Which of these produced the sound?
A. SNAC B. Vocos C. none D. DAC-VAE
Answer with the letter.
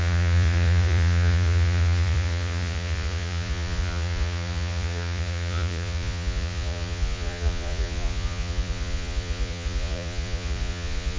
B